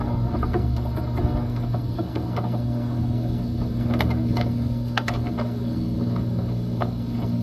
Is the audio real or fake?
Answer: fake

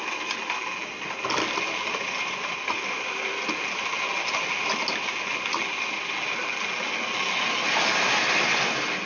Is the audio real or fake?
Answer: real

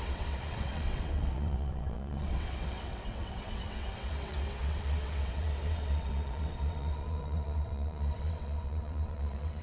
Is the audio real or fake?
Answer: fake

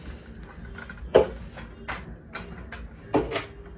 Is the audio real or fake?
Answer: real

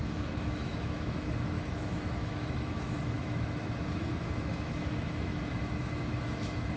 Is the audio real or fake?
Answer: fake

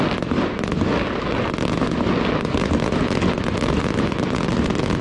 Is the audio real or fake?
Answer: real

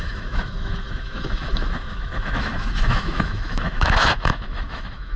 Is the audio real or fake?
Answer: fake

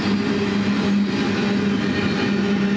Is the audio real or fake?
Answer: real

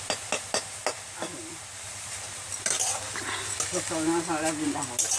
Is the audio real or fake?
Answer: real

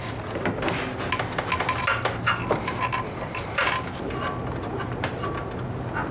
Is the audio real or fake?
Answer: real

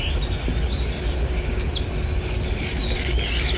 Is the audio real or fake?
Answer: real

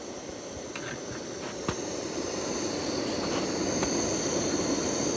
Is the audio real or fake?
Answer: real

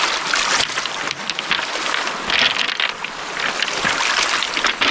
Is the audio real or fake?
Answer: real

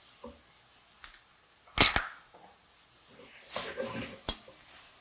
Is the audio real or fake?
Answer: real